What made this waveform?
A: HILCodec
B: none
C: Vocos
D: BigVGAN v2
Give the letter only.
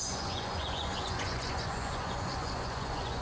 C